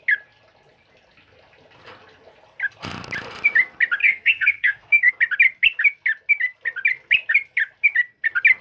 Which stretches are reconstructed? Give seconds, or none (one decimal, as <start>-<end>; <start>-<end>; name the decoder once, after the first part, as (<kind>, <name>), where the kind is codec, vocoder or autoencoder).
4.0-5.1 (codec, SNAC)